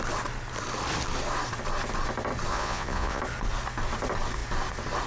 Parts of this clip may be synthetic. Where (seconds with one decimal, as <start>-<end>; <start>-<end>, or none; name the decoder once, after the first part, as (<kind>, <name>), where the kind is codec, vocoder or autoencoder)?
2.5-3.2 (vocoder, Vocos)